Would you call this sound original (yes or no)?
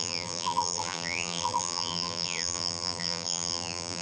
no